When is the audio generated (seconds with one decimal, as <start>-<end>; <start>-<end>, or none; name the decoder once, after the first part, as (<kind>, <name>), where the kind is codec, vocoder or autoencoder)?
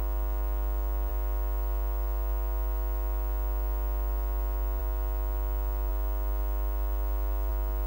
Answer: none